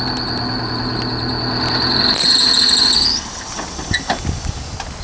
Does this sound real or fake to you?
real